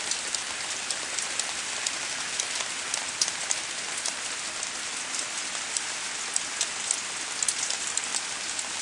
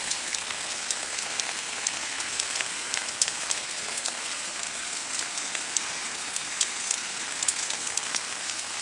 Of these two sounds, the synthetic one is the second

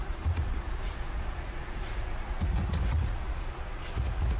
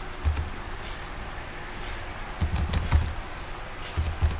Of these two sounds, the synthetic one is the first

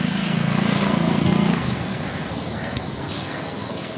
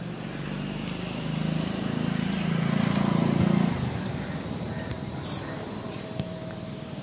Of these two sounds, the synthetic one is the first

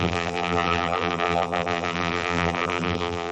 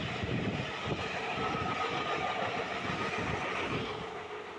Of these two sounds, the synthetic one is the first